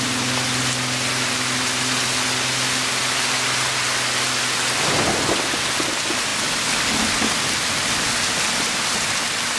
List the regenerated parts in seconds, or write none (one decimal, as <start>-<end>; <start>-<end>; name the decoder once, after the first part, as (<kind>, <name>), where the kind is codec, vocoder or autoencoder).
none